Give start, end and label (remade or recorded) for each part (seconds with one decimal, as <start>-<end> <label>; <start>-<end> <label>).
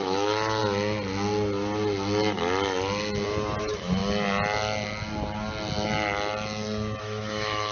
0.0-0.6 remade; 0.6-3.6 recorded; 3.6-4.0 remade; 4.0-7.0 recorded; 7.0-7.7 remade